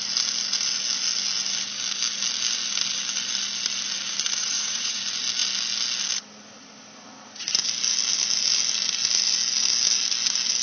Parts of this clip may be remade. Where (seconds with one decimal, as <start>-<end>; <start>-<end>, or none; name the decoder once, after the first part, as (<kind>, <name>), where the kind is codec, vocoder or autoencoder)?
4.4-5.0 (vocoder, Vocos)